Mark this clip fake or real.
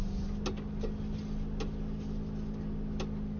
real